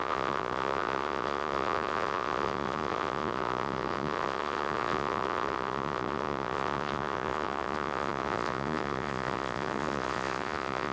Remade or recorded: remade